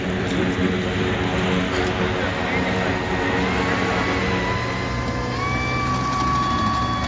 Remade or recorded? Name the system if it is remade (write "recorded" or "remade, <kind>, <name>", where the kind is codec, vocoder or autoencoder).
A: recorded